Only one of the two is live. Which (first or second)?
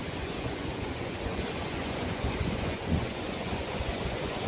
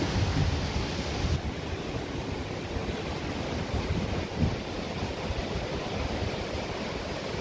second